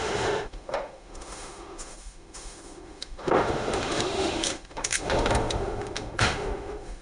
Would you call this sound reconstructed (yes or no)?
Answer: yes